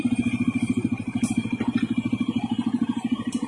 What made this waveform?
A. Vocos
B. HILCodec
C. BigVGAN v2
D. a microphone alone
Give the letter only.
C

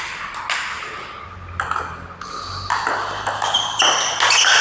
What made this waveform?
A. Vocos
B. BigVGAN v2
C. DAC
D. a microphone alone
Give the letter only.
D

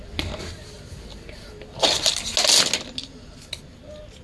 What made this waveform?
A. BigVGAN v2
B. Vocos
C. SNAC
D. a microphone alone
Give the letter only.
D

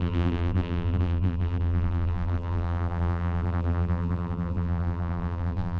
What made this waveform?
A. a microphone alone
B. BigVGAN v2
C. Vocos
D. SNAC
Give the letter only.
B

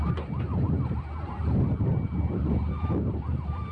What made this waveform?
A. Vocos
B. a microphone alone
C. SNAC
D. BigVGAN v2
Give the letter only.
D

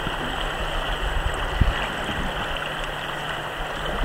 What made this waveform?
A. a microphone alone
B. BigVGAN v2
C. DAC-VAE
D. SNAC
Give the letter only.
A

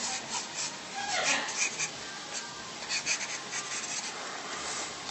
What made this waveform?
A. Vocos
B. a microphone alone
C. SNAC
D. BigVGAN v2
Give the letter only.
B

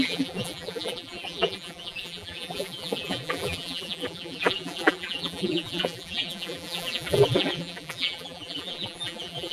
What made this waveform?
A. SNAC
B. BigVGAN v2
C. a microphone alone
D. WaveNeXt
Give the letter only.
B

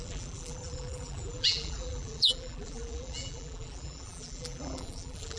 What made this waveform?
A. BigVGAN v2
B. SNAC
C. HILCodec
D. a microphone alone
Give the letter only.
A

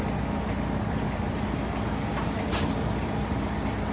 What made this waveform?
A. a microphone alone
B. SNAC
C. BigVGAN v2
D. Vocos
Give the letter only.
C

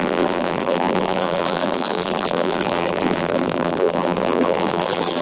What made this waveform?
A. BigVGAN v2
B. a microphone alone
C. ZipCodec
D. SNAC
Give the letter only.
A